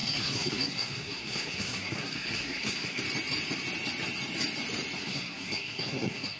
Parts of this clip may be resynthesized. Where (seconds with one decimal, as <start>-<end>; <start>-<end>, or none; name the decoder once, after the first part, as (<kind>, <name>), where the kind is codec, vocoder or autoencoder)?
0.0-3.0 (codec, SNAC); 5.0-6.4